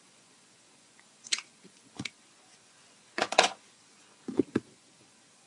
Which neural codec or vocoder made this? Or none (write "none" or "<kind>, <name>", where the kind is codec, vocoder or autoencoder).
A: vocoder, Vocos